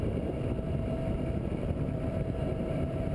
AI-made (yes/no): yes